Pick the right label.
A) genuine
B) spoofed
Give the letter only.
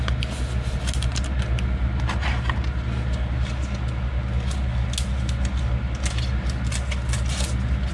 A